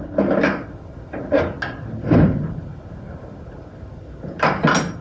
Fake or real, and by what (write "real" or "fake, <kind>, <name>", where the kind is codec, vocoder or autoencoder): real